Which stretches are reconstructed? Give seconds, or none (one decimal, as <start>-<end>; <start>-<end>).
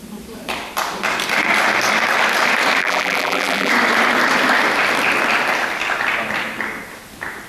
2.8-3.7